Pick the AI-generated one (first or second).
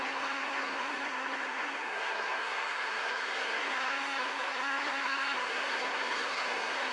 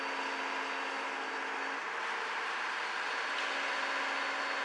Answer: first